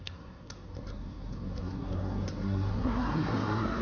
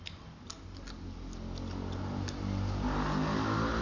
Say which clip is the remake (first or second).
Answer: first